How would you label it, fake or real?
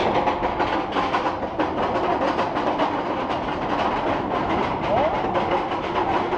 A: real